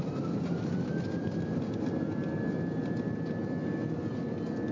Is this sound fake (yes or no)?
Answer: no